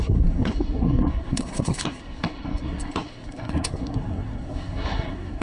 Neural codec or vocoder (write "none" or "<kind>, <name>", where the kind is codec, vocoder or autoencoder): codec, SNAC